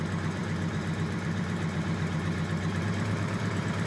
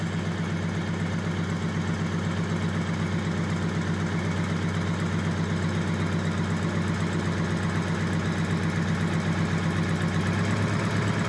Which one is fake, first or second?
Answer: first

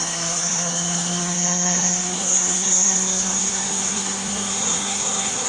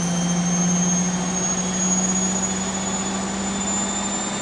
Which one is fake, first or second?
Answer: first